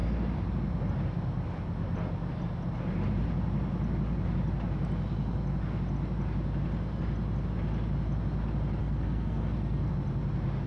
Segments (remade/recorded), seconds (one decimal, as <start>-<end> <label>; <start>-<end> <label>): 0.0-8.8 recorded; 8.8-9.9 remade; 9.9-10.7 recorded